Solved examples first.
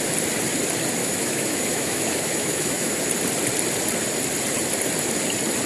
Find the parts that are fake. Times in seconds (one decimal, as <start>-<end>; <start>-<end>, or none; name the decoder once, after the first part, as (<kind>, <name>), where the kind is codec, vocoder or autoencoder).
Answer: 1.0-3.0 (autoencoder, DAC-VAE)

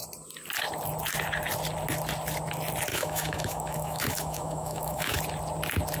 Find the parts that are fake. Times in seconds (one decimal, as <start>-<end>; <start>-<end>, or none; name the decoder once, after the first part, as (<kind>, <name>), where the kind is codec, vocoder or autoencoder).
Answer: 2.9-5.2 (autoencoder, DAC-VAE)

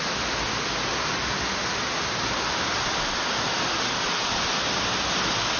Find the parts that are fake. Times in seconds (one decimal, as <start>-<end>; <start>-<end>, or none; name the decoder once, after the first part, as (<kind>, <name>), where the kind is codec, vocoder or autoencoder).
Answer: none